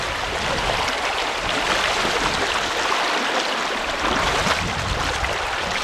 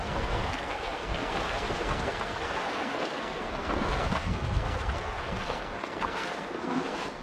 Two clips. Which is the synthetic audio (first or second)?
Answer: second